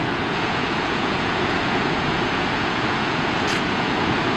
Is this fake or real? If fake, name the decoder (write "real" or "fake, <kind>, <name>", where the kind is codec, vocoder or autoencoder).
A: fake, vocoder, Vocos